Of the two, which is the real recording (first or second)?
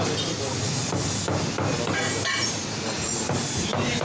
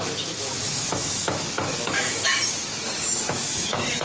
first